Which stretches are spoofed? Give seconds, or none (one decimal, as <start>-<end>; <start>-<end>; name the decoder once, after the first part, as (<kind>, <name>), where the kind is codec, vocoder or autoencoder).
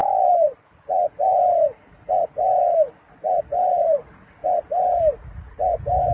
none